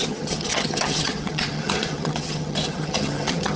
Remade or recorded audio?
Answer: remade